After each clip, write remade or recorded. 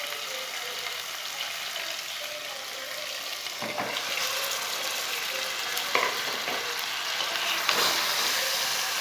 recorded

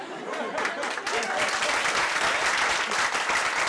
recorded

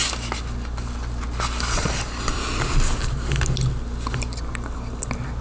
recorded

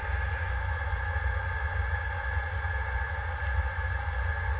recorded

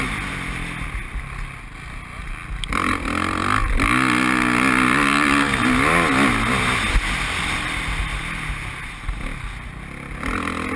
recorded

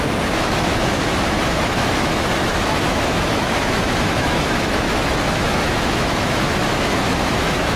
remade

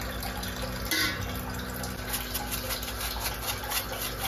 recorded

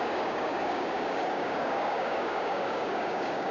remade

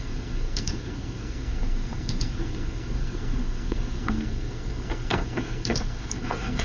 remade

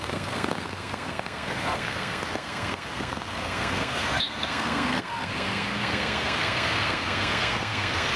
remade